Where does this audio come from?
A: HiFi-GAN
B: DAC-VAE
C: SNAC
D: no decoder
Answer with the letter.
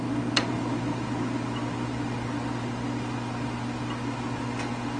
D